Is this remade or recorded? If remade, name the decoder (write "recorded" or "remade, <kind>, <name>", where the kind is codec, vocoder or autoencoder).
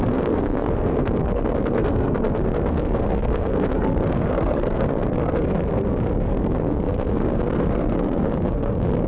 remade, codec, SNAC